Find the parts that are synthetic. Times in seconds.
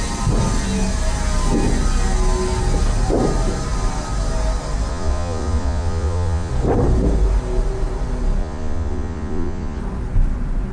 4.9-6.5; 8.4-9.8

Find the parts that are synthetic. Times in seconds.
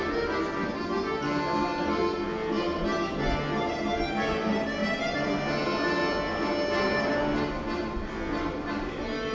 none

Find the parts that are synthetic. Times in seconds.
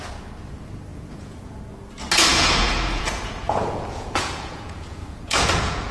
0.9-1.6; 2.3-5.9